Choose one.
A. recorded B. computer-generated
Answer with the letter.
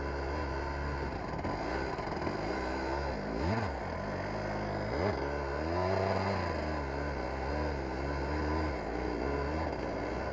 A